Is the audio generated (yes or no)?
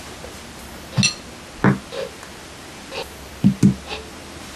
no